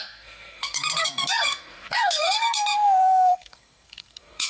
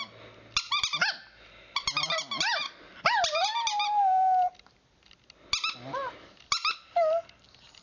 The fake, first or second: first